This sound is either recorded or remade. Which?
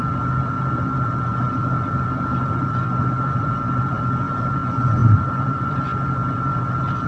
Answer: remade